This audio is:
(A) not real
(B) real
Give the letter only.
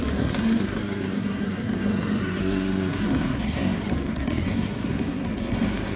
A